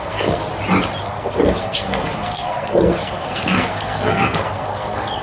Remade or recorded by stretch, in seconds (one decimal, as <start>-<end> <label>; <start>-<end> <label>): 0.0-0.4 remade; 0.4-1.0 recorded; 1.0-5.2 remade